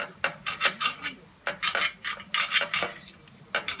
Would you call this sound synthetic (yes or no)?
no